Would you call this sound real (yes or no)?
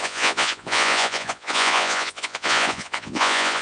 no